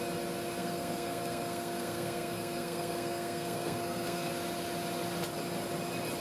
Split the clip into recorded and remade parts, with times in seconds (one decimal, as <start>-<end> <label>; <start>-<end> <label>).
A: 0.0-0.6 recorded; 0.6-4.3 remade; 4.3-6.2 recorded